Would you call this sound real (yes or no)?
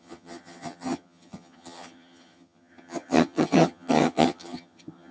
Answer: no